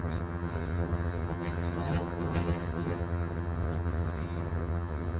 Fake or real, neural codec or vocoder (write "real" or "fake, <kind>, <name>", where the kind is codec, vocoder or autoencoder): fake, vocoder, HiFi-GAN